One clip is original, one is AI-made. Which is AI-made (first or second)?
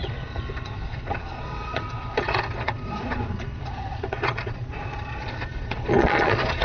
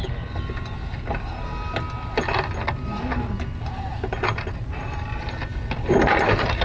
first